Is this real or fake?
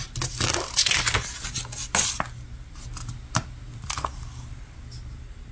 real